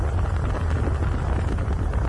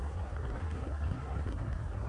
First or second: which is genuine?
first